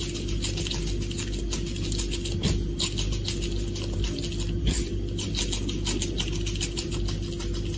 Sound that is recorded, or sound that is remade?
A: recorded